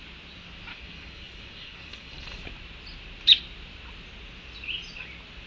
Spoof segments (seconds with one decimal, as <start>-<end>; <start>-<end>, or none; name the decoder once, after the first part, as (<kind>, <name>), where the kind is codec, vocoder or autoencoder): 0.7-2.4 (codec, DAC)